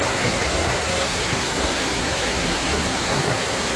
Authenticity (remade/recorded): remade